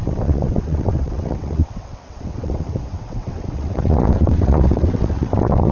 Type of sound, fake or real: fake